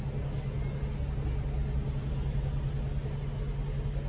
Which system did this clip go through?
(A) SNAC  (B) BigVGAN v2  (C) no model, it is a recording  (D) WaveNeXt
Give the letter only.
C